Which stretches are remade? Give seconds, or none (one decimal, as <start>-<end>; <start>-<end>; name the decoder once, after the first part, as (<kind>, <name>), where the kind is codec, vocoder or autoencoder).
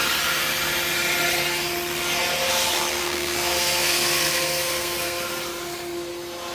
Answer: 3.0-5.3 (codec, SNAC)